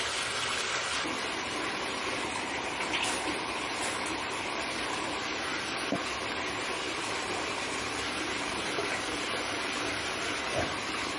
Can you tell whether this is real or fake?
fake